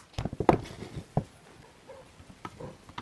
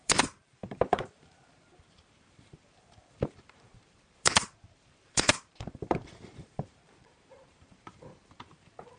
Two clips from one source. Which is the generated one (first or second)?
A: second